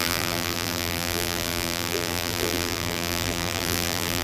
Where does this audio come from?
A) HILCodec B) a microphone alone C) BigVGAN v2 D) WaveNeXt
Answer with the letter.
C